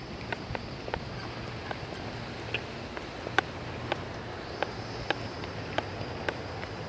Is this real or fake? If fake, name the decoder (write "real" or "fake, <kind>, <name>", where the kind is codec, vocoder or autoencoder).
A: real